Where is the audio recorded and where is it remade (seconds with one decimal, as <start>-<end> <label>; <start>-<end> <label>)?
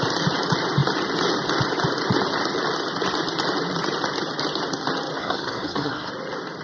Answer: 0.0-5.2 recorded; 5.2-6.1 remade; 6.1-6.6 recorded